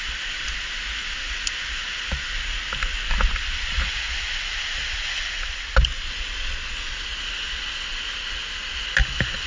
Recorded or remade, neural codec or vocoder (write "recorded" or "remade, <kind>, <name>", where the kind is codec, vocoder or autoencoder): recorded